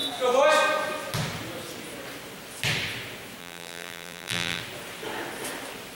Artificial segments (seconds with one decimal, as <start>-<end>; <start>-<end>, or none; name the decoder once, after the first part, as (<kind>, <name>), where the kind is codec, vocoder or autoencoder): 3.4-4.6 (vocoder, BigVGAN v2)